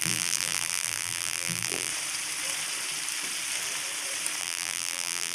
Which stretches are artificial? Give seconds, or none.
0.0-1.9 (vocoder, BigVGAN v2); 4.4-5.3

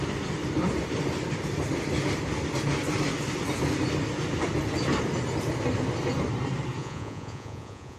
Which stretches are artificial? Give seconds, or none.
6.8-8.0 (vocoder, Vocos)

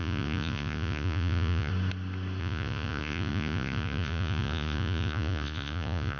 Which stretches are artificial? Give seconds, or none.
0.0-1.7 (vocoder, Vocos); 2.4-6.2